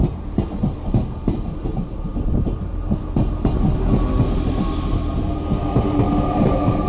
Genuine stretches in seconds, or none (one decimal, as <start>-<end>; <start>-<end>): 0.0-6.9